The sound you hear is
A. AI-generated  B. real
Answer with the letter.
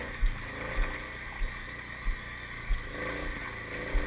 B